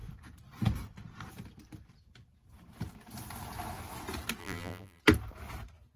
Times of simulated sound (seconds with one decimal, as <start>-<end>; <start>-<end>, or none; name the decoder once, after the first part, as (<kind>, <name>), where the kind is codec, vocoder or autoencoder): 4.4-5.0 (vocoder, BigVGAN v2)